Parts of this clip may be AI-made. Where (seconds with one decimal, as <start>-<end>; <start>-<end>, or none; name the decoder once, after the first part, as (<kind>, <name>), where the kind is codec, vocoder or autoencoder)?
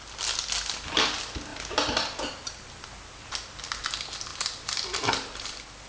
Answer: none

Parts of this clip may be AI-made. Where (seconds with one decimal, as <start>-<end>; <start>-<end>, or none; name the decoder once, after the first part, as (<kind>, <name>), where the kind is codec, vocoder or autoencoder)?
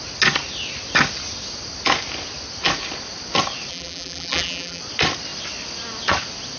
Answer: 3.7-4.8 (vocoder, BigVGAN v2)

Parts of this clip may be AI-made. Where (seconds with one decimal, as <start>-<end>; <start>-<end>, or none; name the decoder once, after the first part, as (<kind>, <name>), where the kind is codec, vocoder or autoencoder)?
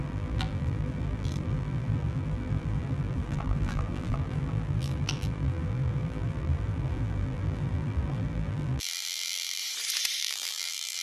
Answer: 0.0-9.6 (vocoder, BigVGAN v2); 10.2-11.0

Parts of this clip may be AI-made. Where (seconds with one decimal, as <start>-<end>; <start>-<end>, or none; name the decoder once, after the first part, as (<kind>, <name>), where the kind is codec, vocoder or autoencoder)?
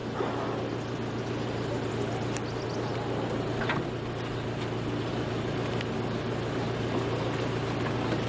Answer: none